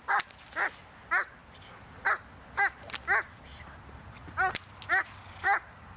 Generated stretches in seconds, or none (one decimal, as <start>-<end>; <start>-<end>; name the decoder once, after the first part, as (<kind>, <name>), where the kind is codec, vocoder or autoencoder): none